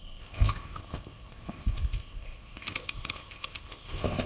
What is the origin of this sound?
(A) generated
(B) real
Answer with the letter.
A